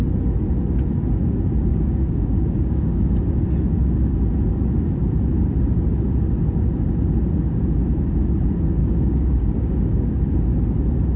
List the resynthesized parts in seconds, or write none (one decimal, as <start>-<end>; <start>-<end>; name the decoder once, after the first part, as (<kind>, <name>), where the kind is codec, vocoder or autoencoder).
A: 1.7-3.1 (codec, DAC); 8.8-10.2